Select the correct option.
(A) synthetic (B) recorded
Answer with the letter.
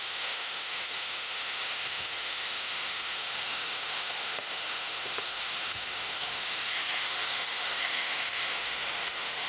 A